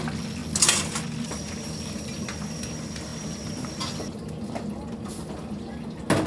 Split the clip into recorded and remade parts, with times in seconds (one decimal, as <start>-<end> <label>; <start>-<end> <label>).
0.0-6.3 recorded